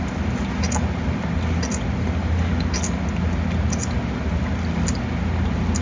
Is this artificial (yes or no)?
no